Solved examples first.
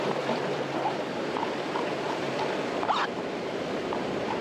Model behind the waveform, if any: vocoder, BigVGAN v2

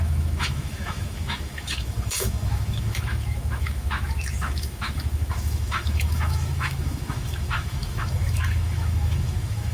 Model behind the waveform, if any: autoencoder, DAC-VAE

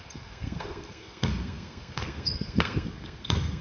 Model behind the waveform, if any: codec, SNAC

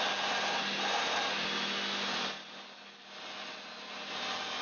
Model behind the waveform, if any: none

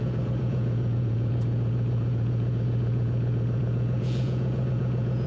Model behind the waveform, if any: vocoder, Vocos